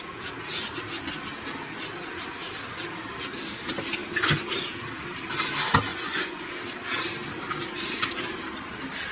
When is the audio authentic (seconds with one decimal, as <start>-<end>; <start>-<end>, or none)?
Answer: 0.0-5.9; 6.5-9.1